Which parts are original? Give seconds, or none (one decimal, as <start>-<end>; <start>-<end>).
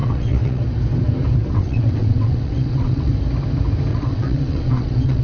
0.6-1.5; 3.1-3.9